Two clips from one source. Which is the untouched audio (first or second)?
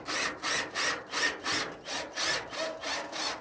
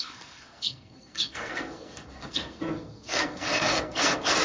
first